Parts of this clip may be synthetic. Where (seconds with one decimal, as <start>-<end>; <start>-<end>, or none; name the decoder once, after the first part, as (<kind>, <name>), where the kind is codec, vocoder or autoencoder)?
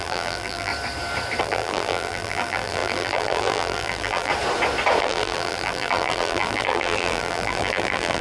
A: 0.0-0.7 (vocoder, BigVGAN v2); 1.4-4.3; 5.0-8.2